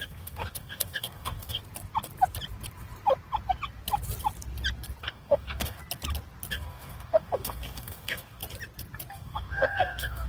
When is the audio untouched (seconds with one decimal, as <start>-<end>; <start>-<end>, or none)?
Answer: 1.6-5.0; 5.8-6.5; 8.4-9.1